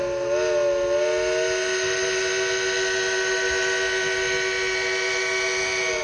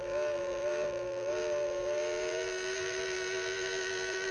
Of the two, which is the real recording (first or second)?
first